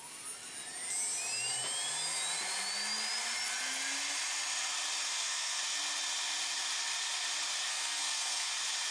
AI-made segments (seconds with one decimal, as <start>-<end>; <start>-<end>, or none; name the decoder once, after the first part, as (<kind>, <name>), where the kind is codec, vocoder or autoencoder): 5.1-5.6 (codec, SNAC); 7.7-8.5